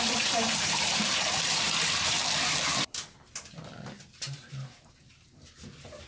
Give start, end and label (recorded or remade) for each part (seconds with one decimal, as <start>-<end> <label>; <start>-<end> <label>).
0.0-2.7 remade; 2.7-4.0 recorded; 4.0-6.1 remade